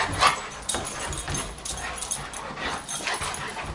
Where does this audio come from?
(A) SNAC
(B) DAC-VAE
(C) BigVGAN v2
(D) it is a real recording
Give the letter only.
D